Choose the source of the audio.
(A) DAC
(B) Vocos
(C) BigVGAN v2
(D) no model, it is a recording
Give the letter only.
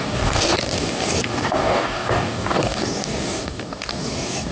A